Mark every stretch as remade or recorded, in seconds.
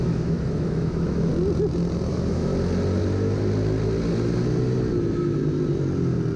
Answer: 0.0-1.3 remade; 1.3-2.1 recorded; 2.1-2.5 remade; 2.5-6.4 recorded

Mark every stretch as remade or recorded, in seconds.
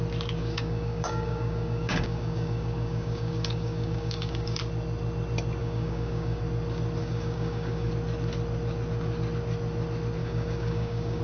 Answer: 0.0-0.4 recorded; 0.4-4.6 remade; 4.6-5.6 recorded; 5.6-6.4 remade; 6.4-7.0 recorded; 7.0-7.9 remade; 7.9-10.2 recorded; 10.2-11.2 remade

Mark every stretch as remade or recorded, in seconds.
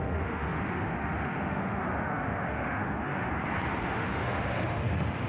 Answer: 0.0-3.3 remade; 3.3-3.8 recorded; 3.8-5.3 remade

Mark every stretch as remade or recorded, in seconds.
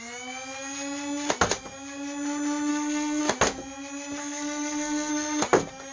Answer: 0.0-2.7 recorded; 2.7-3.2 remade; 3.2-4.2 recorded; 4.2-5.1 remade; 5.1-5.9 recorded